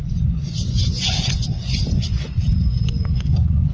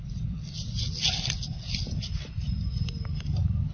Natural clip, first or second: second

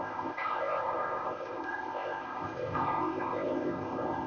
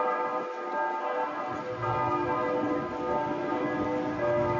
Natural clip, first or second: second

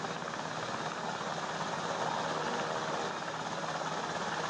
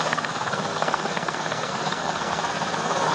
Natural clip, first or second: first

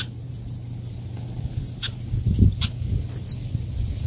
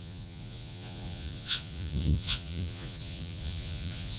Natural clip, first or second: first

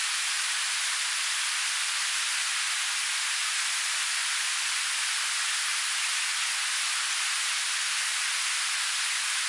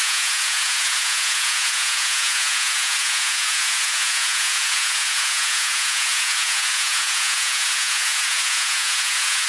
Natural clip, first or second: first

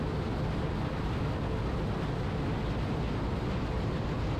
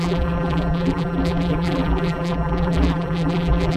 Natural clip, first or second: first